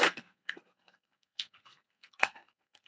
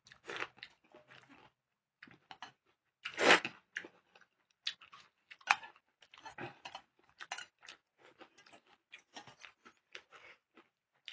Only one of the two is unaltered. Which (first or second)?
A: second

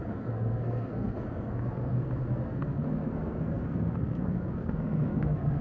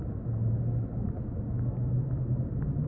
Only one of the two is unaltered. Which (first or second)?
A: second